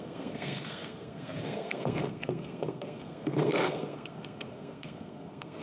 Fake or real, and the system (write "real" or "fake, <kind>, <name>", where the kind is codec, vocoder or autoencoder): fake, codec, SNAC